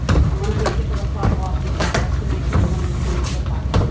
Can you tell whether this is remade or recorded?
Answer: recorded